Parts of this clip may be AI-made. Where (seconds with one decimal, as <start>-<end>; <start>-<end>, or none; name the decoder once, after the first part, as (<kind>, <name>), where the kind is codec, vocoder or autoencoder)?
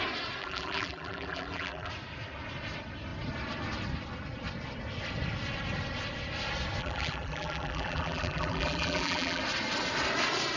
0.4-1.9 (vocoder, BigVGAN v2); 6.8-9.4